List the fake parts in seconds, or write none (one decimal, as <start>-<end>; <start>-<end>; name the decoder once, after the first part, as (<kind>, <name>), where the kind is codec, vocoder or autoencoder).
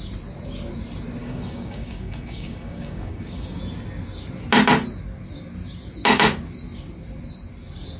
1.2-3.6 (codec, DAC)